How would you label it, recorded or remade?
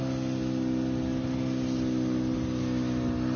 recorded